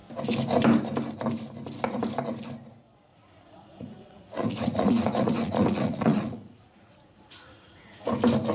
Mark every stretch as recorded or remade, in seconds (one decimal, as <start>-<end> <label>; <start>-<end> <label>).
0.0-3.1 recorded; 3.1-8.0 remade; 8.0-8.5 recorded